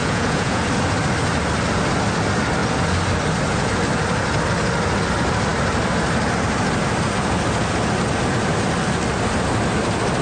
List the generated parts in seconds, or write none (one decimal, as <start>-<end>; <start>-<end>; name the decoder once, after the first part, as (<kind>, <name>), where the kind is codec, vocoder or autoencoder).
0.0-0.6 (vocoder, Vocos)